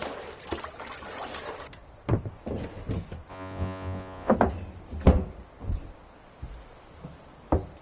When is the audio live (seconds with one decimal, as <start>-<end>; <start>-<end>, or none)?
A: 0.0-3.3; 4.3-7.8